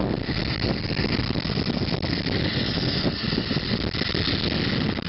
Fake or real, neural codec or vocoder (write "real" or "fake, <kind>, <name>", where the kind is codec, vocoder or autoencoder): real